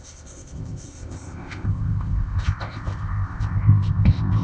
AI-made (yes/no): yes